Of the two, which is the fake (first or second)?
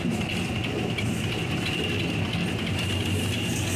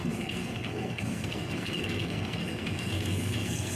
second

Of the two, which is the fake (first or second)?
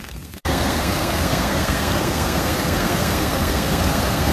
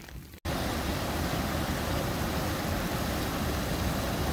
first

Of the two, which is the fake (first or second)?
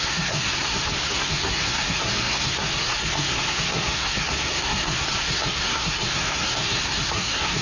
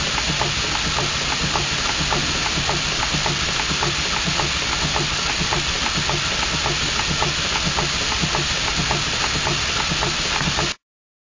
first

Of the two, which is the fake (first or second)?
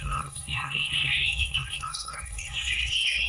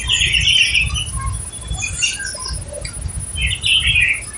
first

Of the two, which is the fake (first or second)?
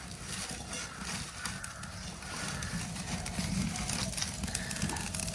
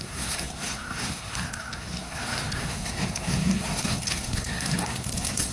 second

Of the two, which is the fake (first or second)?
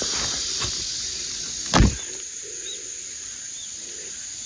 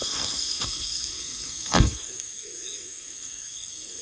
second